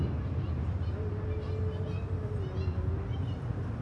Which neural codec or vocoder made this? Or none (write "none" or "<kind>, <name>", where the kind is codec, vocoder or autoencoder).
none